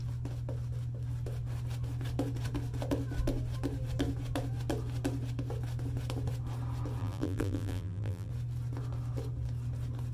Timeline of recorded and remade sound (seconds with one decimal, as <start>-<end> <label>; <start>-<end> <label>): 0.0-7.0 recorded; 7.0-8.3 remade; 8.3-10.1 recorded